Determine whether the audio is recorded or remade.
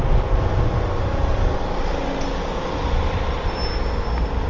recorded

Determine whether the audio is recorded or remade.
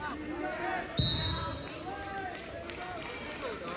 recorded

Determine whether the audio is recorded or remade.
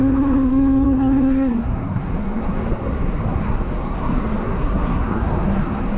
remade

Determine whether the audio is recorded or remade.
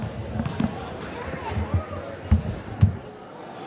recorded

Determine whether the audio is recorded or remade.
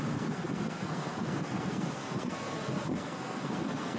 remade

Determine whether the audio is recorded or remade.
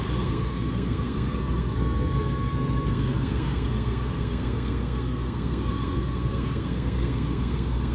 remade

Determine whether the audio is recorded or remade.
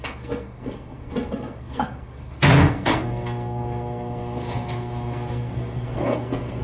remade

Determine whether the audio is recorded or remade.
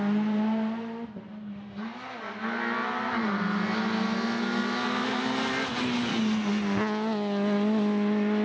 recorded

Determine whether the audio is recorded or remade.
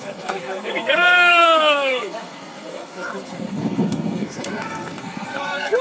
remade